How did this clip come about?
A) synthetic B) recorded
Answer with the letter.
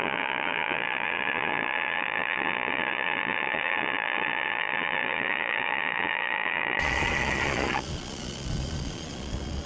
A